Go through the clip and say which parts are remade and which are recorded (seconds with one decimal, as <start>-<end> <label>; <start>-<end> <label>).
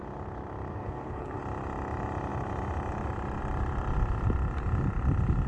0.0-0.7 recorded; 0.7-1.4 remade; 1.4-5.5 recorded